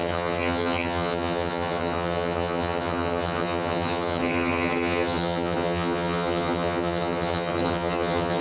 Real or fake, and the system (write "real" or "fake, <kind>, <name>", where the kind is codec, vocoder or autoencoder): fake, vocoder, HiFi-GAN